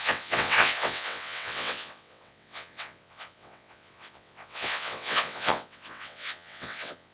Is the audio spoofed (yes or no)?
yes